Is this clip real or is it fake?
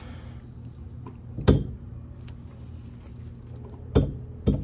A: real